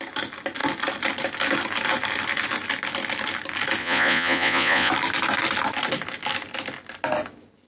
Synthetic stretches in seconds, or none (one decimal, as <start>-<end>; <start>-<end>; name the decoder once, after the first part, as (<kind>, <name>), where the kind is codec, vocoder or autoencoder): 3.8-4.9 (vocoder, Vocos)